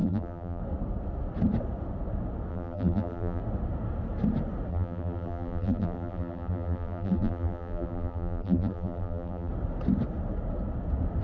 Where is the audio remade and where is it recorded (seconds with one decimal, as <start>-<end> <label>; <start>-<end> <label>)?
0.0-0.6 remade; 0.6-2.5 recorded; 2.5-3.4 remade; 3.4-4.7 recorded; 4.7-9.5 remade; 9.5-11.2 recorded